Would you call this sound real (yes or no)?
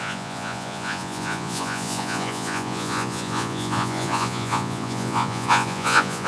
no